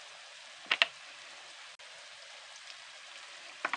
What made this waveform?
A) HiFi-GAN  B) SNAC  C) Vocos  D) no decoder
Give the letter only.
D